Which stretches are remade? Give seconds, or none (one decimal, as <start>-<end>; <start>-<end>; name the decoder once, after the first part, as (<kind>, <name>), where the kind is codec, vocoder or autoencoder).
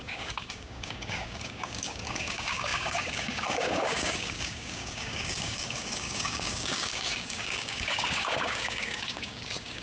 0.0-9.8 (codec, DAC)